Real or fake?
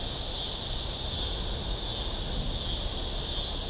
real